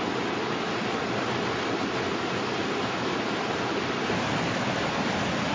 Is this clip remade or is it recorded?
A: recorded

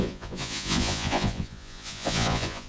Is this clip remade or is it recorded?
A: remade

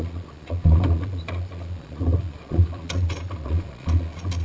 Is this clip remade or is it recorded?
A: remade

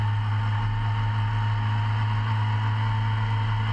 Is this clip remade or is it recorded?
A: recorded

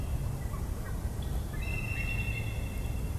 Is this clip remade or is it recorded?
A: recorded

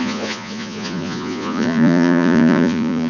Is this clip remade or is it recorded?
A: remade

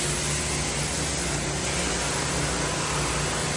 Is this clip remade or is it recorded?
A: recorded